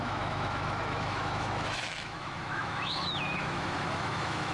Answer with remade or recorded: remade